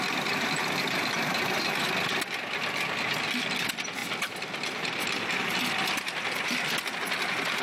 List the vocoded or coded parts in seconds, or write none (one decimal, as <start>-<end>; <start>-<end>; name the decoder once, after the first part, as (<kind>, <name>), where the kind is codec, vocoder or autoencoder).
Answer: none